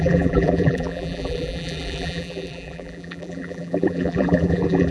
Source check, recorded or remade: remade